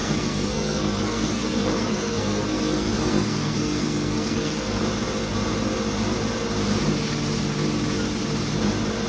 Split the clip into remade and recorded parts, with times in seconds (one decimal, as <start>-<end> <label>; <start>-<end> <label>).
0.0-4.8 remade; 4.8-9.1 recorded

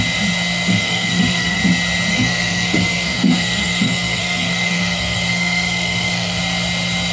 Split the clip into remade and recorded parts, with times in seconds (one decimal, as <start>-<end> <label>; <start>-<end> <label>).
0.0-0.7 recorded; 0.7-1.6 remade; 1.6-2.1 recorded; 2.1-6.4 remade; 6.4-7.1 recorded